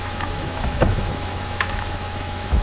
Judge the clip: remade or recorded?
remade